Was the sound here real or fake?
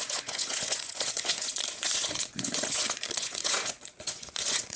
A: fake